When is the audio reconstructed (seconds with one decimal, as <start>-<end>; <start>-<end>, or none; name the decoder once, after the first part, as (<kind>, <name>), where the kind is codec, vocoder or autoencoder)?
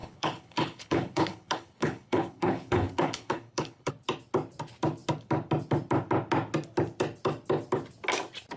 0.0-3.9 (codec, HILCodec)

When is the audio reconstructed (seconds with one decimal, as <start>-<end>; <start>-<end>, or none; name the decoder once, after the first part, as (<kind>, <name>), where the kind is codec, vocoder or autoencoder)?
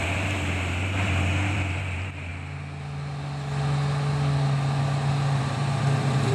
0.0-2.3 (vocoder, BigVGAN v2); 5.4-6.3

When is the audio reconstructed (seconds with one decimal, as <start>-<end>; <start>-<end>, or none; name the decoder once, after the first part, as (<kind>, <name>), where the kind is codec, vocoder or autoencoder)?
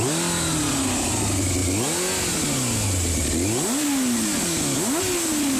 none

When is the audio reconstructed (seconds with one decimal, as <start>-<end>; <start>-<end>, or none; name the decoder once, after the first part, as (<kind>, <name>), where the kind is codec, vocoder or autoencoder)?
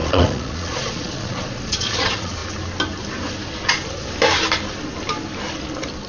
0.0-2.4 (vocoder, Vocos)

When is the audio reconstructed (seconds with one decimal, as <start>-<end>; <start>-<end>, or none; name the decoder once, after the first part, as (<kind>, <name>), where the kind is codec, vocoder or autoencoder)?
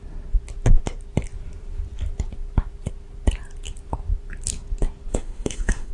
5.1-5.9 (autoencoder, DAC-VAE)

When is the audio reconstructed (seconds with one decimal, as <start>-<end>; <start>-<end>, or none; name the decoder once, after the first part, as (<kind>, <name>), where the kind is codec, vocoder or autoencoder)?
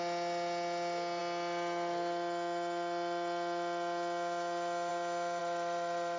5.4-6.2 (vocoder, BigVGAN v2)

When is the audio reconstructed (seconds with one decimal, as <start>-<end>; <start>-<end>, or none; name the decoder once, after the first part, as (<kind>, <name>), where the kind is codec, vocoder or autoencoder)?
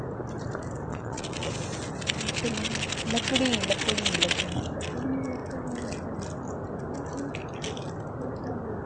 0.9-1.5 (vocoder, Vocos)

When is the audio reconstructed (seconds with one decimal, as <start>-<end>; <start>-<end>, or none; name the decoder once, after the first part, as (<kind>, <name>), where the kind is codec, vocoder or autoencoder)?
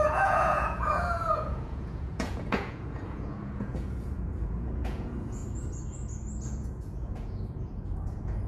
0.0-5.4 (vocoder, Vocos); 6.4-8.5